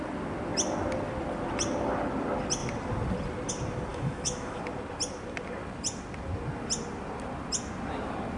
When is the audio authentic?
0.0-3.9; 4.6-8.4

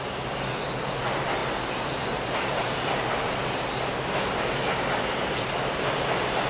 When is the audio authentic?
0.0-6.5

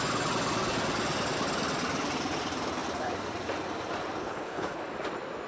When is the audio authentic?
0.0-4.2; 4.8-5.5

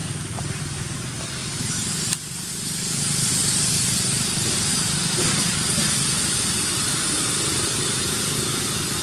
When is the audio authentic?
0.6-1.4; 3.3-9.0

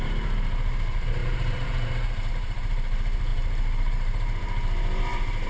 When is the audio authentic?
none